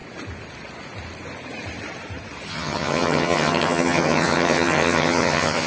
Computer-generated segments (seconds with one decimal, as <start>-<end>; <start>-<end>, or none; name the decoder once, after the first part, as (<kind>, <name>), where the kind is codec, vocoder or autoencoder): 2.5-5.7 (vocoder, HiFi-GAN)